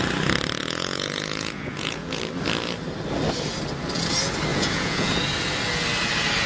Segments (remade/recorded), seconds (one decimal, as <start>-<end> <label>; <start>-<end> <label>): 0.0-0.6 recorded; 0.6-2.2 remade; 2.2-4.5 recorded; 4.5-5.1 remade; 5.1-6.5 recorded